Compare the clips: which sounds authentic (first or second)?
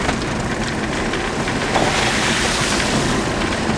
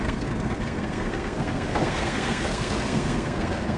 first